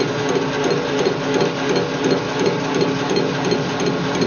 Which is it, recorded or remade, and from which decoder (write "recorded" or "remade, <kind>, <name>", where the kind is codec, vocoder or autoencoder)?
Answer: recorded